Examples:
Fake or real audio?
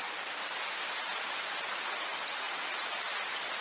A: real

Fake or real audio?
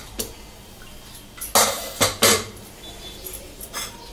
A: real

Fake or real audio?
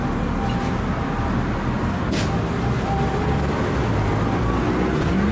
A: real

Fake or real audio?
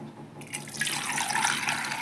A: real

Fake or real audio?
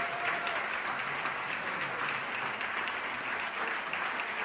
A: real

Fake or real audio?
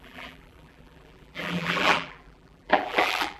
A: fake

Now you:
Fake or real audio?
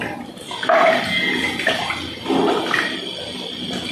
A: real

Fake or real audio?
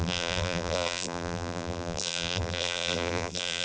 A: fake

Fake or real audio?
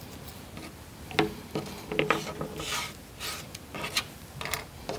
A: real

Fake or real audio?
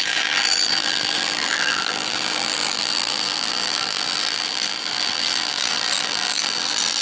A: fake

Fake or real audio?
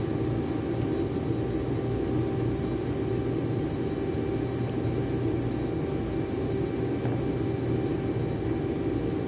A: real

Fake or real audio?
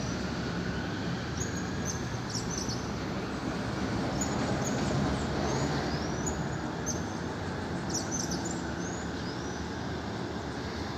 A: real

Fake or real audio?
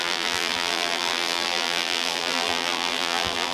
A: fake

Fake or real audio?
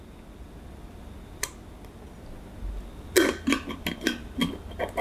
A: real